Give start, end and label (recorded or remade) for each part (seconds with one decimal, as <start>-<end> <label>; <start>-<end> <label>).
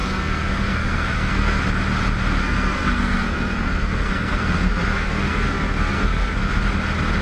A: 0.0-1.6 remade; 1.6-2.4 recorded; 2.4-6.7 remade; 6.7-7.2 recorded